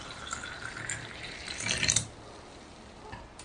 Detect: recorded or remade remade